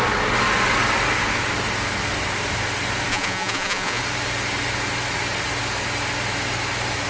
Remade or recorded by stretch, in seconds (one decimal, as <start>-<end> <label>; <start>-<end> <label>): 0.0-3.1 recorded; 3.1-4.0 remade; 4.0-7.1 recorded